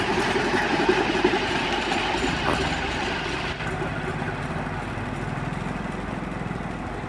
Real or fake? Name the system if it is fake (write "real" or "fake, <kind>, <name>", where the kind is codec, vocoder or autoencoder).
real